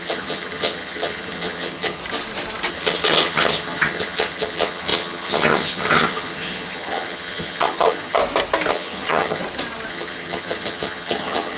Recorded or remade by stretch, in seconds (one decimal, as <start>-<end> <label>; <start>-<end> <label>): 0.0-2.0 remade; 2.0-2.7 recorded; 2.7-8.2 remade; 8.2-8.7 recorded; 8.7-9.4 remade; 9.4-9.9 recorded; 9.9-11.6 remade